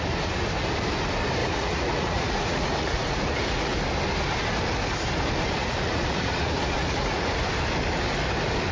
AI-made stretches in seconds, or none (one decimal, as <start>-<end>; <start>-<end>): 1.4-3.7; 5.6-7.3